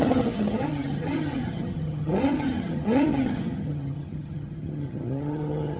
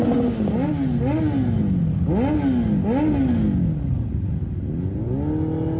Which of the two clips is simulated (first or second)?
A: first